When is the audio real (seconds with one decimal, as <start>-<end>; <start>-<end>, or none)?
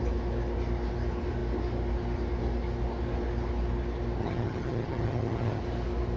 0.0-4.2; 5.6-6.2